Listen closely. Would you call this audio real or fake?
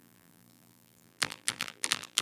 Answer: fake